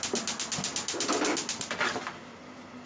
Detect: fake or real real